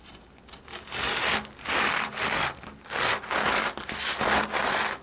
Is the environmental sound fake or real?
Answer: real